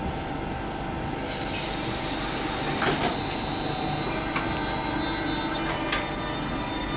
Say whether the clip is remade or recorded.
recorded